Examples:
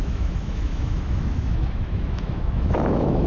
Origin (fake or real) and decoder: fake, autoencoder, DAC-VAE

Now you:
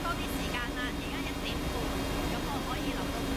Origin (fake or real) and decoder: real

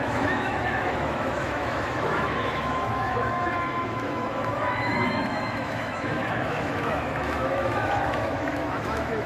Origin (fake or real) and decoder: fake, autoencoder, DAC-VAE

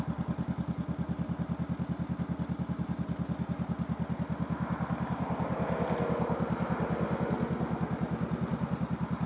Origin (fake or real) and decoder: real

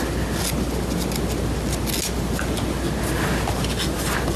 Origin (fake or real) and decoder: real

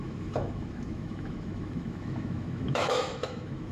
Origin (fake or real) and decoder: fake, autoencoder, DAC-VAE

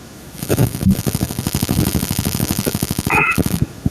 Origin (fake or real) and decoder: fake, autoencoder, DAC-VAE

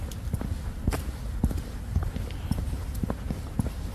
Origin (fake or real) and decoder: real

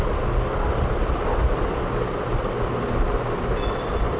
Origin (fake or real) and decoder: real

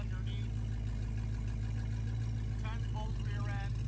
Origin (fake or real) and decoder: real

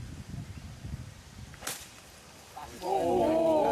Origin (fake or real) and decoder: real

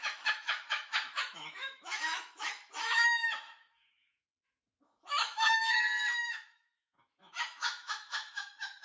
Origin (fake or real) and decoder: fake, autoencoder, DAC-VAE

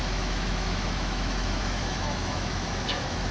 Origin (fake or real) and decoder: fake, autoencoder, DAC-VAE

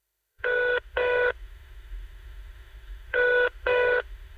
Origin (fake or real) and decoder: fake, autoencoder, DAC-VAE